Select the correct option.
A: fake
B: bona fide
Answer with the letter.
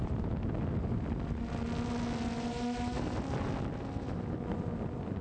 B